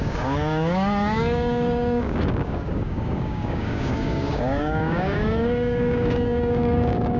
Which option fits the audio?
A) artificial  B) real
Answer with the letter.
A